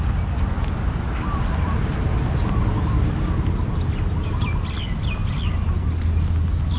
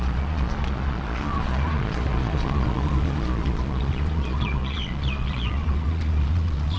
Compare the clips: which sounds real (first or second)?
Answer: first